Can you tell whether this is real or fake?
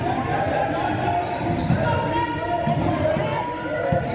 real